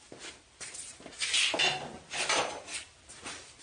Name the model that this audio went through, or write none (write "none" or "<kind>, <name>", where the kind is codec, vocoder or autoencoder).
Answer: none